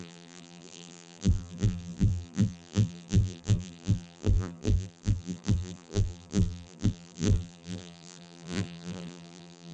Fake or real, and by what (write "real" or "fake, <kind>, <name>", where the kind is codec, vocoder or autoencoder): fake, vocoder, BigVGAN v2